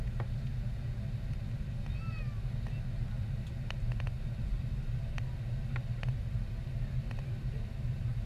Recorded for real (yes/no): yes